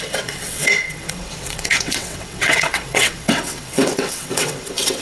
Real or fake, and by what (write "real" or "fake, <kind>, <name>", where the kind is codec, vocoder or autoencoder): fake, vocoder, WaveNeXt